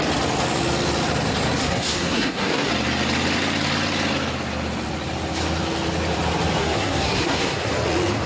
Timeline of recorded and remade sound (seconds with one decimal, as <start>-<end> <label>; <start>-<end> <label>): 0.0-1.6 recorded; 1.6-2.7 remade; 2.7-6.6 recorded; 6.6-7.7 remade; 7.7-8.3 recorded